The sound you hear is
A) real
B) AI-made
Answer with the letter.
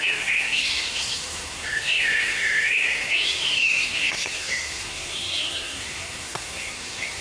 B